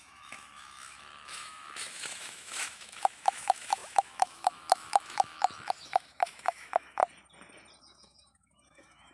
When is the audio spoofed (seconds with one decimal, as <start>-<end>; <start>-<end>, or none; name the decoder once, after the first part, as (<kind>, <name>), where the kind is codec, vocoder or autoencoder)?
0.0-7.0 (autoencoder, DAC-VAE); 7.8-9.1